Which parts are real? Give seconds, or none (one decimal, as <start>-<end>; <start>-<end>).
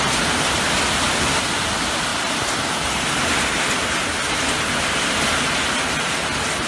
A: 0.0-2.1; 2.6-6.7